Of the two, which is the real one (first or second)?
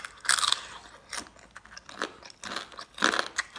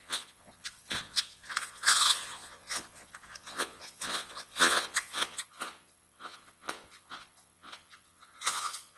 first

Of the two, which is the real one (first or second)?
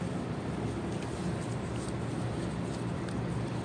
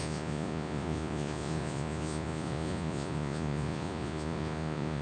first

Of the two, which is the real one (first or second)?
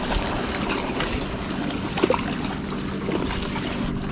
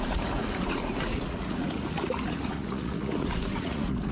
first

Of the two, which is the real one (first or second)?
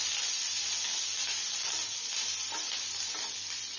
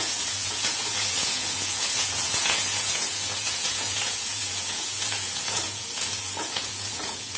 first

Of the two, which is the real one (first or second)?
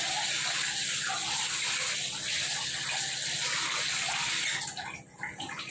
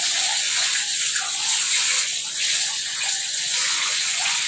first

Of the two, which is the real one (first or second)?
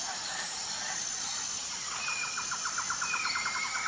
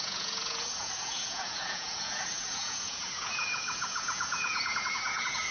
first